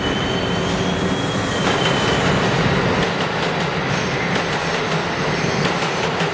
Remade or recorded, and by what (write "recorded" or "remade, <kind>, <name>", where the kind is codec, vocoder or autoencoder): recorded